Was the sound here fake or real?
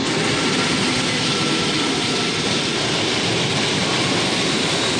real